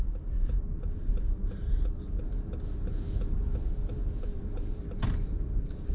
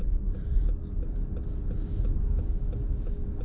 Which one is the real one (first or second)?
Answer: second